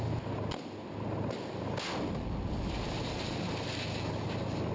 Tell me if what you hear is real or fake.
real